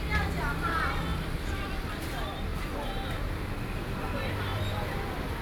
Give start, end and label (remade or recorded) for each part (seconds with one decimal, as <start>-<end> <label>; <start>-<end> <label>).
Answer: 0.0-1.1 recorded; 1.1-1.9 remade; 1.9-2.5 recorded; 2.5-4.0 remade; 4.0-4.5 recorded; 4.5-5.4 remade